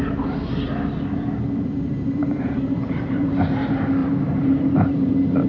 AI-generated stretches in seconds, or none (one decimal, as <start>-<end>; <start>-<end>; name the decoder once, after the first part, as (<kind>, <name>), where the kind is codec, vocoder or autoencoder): 1.9-3.6 (vocoder, BigVGAN v2); 4.0-5.5